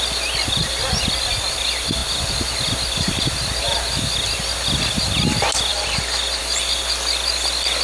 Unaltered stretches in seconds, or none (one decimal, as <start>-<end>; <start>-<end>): 0.0-5.7; 6.4-7.8